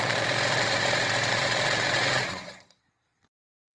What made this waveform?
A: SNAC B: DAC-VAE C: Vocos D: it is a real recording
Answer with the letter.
C